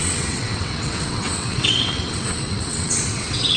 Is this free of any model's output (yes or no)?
no